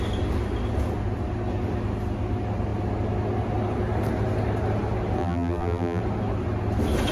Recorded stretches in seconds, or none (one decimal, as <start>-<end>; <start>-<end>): 0.0-5.2; 6.0-7.1